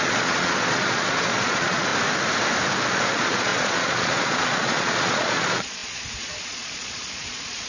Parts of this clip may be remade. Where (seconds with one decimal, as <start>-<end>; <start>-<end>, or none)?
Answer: 0.0-1.9; 2.9-7.7